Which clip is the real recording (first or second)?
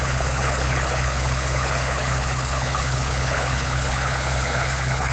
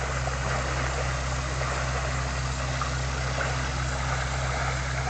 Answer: second